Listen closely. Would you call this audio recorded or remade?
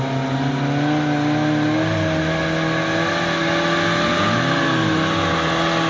recorded